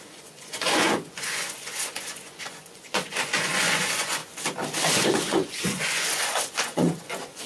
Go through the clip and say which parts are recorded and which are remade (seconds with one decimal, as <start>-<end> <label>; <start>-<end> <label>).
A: 0.0-4.2 remade; 4.2-4.8 recorded; 4.8-7.5 remade